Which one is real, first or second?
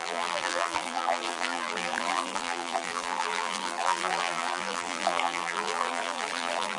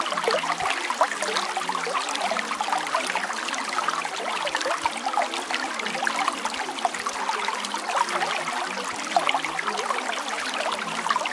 second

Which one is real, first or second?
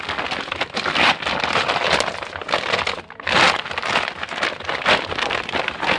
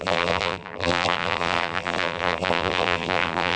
first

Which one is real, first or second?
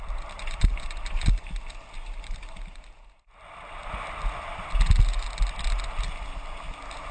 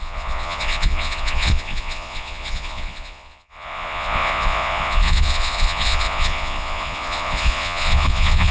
first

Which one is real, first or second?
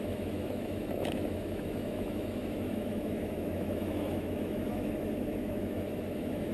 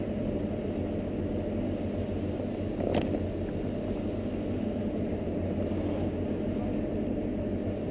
second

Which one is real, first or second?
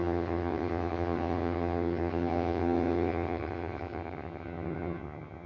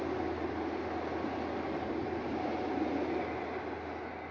second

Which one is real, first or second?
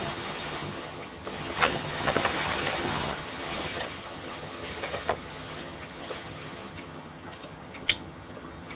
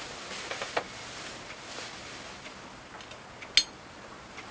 second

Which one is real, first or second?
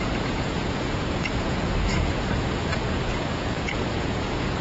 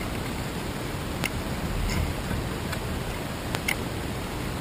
second